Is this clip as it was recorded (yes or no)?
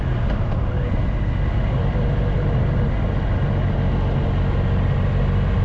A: yes